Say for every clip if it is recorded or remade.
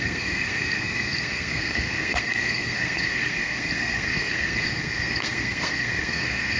remade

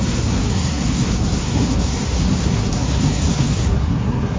remade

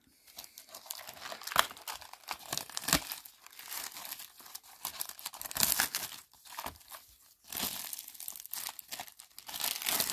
recorded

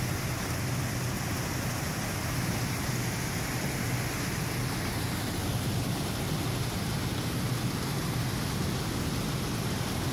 recorded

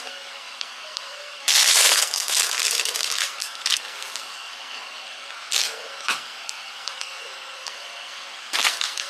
remade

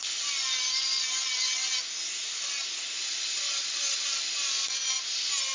recorded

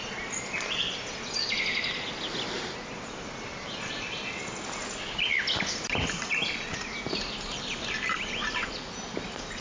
recorded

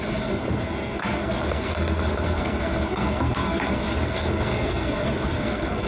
remade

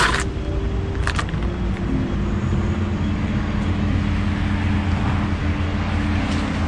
recorded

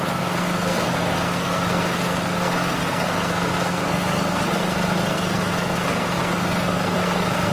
remade